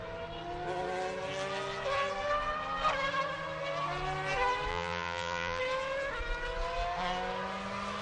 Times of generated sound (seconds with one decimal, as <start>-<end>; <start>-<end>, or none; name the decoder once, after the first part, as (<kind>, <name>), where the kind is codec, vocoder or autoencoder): 4.7-5.6 (vocoder, BigVGAN v2)